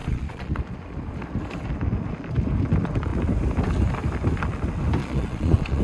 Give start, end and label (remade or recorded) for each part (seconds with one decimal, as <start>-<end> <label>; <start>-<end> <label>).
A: 0.0-0.6 remade; 0.6-5.0 recorded; 5.0-5.8 remade